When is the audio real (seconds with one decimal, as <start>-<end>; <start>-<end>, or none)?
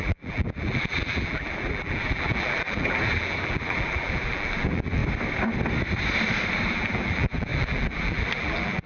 5.0-6.7